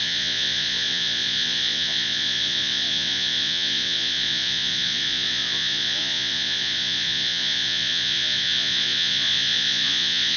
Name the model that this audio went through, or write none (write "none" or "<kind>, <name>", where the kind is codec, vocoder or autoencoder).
vocoder, Vocos